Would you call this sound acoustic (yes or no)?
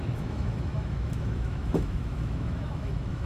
no